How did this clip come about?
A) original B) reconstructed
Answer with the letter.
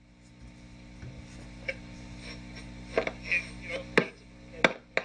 A